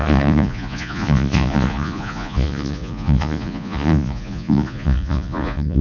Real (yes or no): no